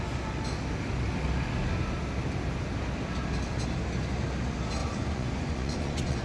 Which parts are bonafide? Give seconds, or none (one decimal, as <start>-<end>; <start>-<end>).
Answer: 0.0-4.8